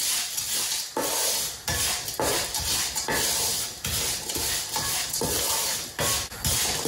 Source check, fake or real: real